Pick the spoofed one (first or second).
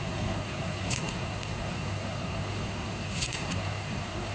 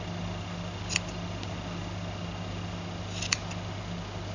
first